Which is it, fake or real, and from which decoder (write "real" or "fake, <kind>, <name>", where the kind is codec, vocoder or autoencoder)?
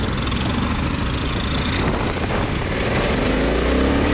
real